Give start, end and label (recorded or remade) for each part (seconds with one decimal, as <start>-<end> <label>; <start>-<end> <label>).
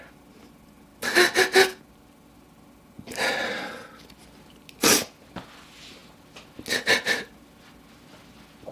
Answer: 0.0-8.7 recorded